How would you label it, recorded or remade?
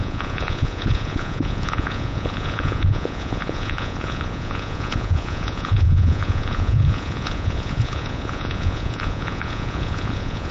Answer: remade